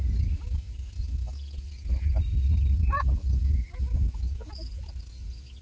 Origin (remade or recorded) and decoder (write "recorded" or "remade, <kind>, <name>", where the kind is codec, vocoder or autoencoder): recorded